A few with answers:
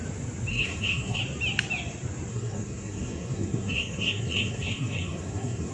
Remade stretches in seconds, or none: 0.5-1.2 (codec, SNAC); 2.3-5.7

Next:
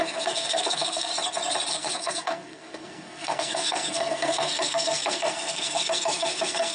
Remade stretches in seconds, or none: 0.0-1.1 (codec, SNAC); 1.7-6.7

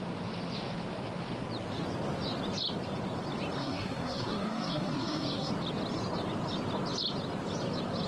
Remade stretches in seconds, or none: 3.6-5.5 (codec, SNAC)